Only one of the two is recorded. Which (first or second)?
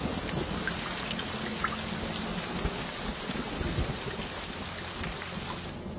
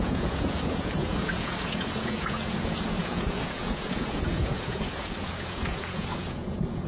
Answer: first